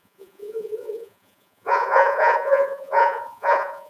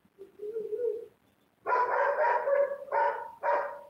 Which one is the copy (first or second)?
first